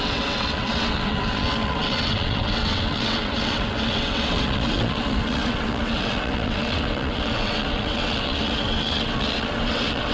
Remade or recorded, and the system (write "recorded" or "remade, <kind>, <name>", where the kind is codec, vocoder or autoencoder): remade, vocoder, WaveNeXt